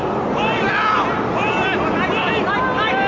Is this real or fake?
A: real